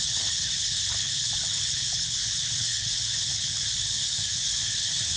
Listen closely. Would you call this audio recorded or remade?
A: remade